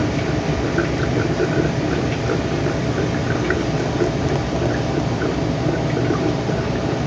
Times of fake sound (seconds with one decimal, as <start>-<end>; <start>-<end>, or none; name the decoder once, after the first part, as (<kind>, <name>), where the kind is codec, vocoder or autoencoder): 0.0-3.2 (vocoder, BigVGAN v2)